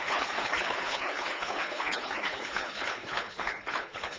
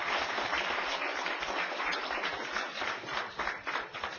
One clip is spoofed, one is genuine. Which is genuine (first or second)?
second